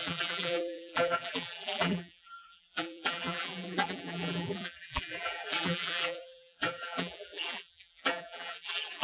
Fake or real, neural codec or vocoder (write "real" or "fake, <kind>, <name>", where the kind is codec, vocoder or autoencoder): fake, vocoder, BigVGAN v2